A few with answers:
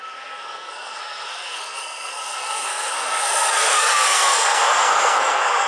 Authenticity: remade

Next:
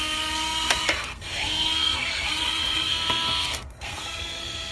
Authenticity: remade